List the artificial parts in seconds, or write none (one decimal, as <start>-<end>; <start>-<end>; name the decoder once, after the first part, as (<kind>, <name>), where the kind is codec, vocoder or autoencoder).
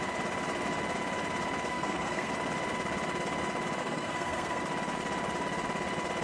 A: 1.7-2.3 (codec, SNAC); 3.8-4.6